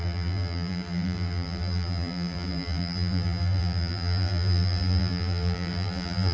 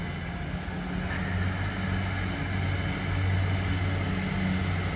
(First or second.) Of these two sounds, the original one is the second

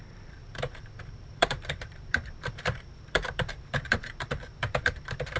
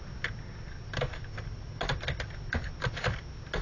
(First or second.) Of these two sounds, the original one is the second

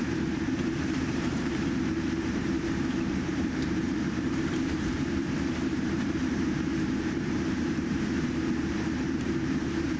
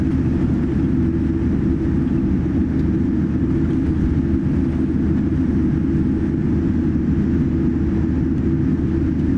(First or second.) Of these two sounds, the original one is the second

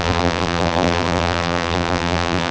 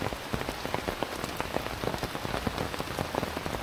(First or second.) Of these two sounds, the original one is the second